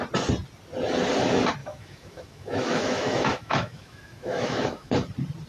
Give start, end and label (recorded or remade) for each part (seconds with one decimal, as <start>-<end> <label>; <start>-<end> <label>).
0.0-1.6 recorded; 1.6-4.9 remade; 4.9-5.5 recorded